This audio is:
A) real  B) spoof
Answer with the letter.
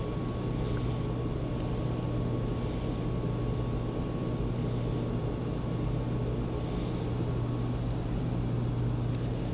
A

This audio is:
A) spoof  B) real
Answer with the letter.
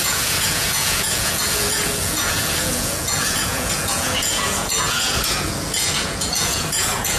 A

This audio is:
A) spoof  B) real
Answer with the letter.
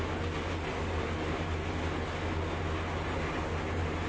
B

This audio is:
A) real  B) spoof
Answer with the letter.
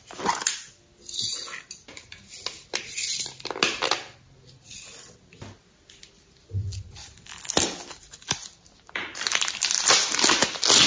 A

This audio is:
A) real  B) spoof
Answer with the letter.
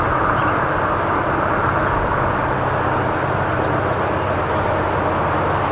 A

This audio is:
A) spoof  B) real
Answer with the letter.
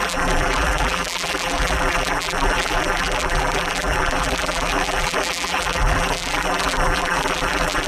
A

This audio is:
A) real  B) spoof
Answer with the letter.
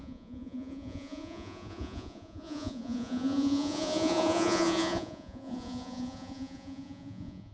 B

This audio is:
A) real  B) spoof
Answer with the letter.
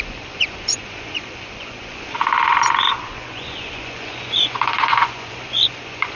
B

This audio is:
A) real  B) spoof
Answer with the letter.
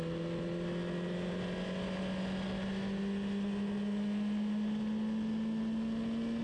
A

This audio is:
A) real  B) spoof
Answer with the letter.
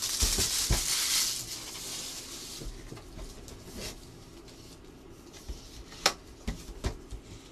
A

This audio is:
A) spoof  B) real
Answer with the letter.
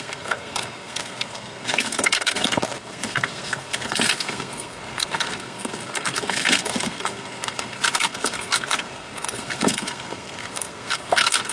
A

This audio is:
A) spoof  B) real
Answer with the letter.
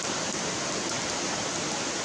B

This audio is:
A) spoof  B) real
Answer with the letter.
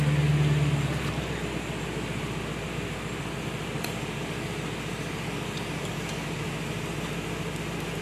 B